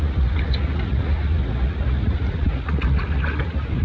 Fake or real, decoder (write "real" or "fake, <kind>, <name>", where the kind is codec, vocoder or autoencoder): fake, vocoder, Vocos